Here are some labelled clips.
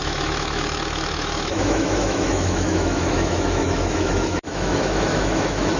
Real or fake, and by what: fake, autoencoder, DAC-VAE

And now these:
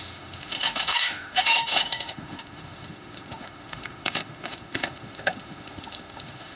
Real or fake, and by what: fake, autoencoder, DAC-VAE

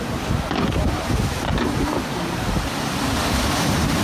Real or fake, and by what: real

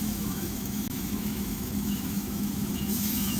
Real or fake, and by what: fake, autoencoder, DAC-VAE